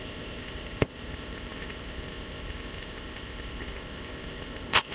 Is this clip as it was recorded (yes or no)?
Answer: no